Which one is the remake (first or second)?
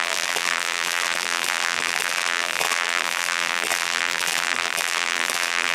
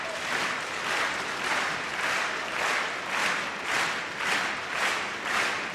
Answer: first